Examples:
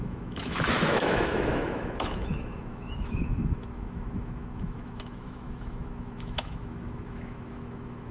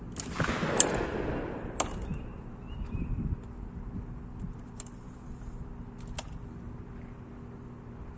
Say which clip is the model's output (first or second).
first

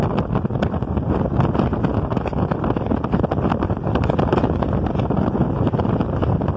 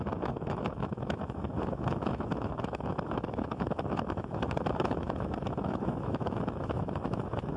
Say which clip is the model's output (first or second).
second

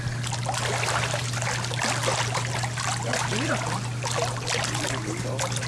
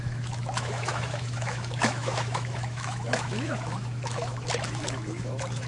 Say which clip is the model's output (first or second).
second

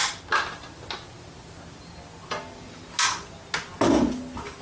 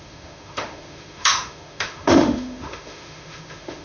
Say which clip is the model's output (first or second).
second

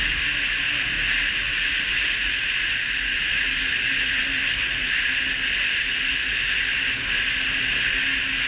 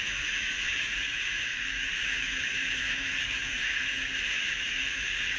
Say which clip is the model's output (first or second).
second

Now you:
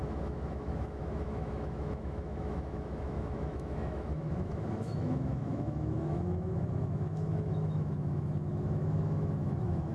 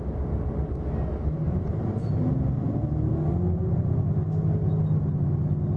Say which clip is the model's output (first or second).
first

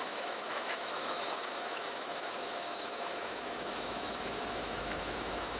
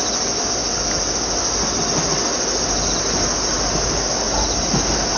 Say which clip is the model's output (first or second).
first